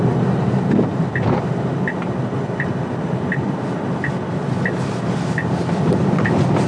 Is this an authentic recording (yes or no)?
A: yes